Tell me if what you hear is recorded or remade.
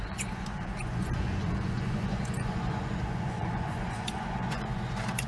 remade